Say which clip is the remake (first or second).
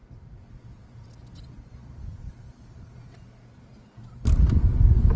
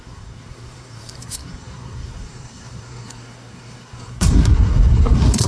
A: second